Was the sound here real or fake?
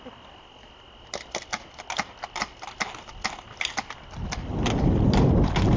real